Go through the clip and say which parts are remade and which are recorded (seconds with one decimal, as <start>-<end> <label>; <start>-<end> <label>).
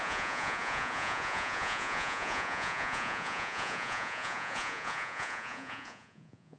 0.0-6.6 remade